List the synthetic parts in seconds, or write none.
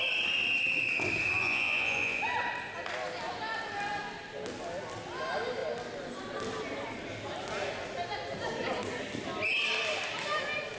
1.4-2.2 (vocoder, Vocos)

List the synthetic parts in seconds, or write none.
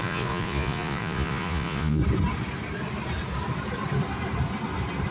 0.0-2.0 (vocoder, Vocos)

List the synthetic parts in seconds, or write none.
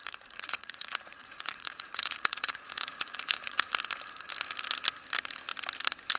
0.0-3.7 (vocoder, Vocos)